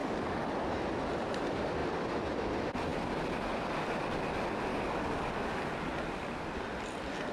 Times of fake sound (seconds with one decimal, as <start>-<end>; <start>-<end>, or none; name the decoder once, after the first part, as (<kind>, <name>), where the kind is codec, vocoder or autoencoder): 0.0-0.5 (codec, DAC); 4.7-5.6

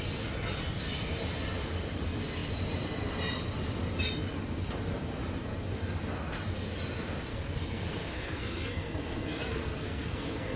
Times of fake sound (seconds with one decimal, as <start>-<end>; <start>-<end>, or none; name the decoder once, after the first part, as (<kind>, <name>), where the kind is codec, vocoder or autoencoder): 7.3-10.6 (codec, SNAC)

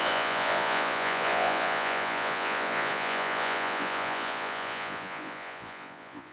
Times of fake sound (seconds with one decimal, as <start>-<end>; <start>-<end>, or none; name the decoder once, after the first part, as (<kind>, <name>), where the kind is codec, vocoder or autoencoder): 0.0-6.3 (vocoder, Vocos)

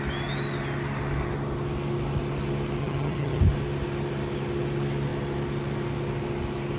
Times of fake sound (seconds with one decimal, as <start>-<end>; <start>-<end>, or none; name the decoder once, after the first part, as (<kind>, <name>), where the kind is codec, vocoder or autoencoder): 2.8-3.4 (vocoder, HiFi-GAN)

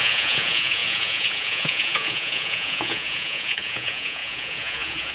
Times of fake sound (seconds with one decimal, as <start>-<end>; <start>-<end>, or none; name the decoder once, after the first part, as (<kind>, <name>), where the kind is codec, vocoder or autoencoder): 0.0-5.1 (vocoder, Vocos)

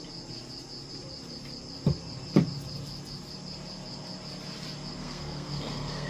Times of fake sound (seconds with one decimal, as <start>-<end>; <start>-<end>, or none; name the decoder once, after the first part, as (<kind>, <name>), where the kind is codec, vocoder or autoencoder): 5.0-6.1 (codec, SNAC)